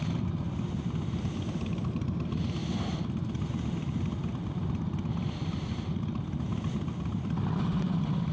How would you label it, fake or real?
real